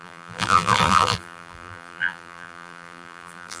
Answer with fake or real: fake